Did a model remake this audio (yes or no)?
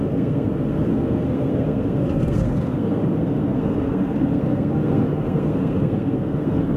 yes